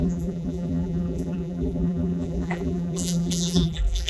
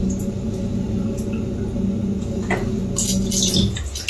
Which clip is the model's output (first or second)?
first